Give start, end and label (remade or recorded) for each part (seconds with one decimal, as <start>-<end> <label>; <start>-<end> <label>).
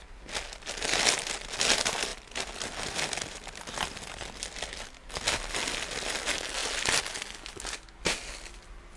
0.0-9.0 recorded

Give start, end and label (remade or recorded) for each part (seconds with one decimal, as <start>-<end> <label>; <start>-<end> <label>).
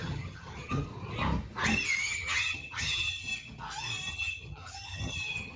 0.0-0.9 remade; 0.9-2.0 recorded; 2.0-3.3 remade; 3.3-4.1 recorded; 4.1-5.6 remade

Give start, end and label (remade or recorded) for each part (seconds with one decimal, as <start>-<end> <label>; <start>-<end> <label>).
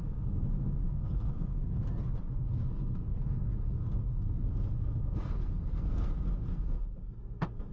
0.0-1.6 remade; 1.6-2.2 recorded; 2.2-7.7 remade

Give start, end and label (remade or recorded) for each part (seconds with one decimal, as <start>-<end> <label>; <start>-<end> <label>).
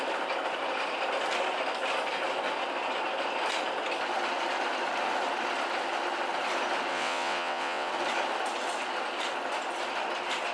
0.0-6.9 recorded; 6.9-7.9 remade; 7.9-10.5 recorded